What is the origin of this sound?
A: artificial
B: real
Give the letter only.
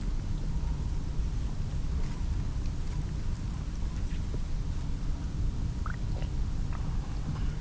B